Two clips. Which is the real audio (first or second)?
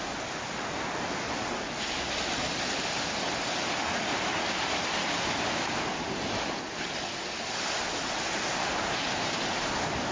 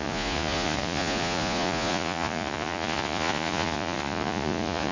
first